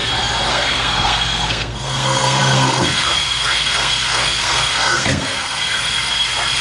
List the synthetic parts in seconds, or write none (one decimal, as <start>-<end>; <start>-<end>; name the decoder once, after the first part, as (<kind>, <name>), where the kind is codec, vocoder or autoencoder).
0.5-6.6 (codec, SNAC)